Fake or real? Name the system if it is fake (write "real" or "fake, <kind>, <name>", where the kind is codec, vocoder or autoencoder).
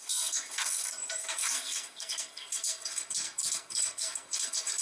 fake, codec, SNAC